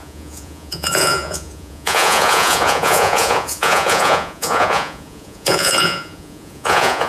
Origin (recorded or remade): remade